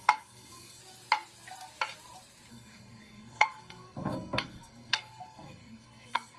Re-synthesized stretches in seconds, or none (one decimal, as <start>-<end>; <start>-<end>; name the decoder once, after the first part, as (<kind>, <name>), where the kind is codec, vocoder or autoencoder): 0.0-0.8 (codec, SNAC); 2.5-6.4